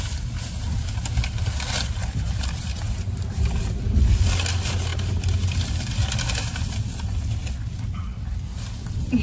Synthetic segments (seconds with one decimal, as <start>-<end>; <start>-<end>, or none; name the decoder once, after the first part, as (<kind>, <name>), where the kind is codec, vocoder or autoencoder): none